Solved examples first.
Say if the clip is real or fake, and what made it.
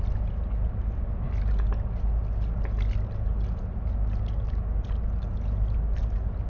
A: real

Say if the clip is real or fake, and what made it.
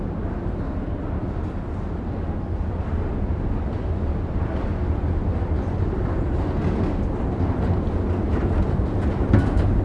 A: real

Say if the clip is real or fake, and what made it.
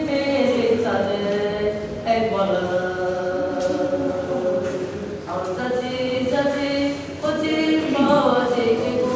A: real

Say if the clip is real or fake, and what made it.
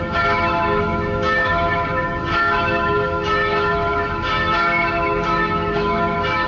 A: fake, autoencoder, DAC-VAE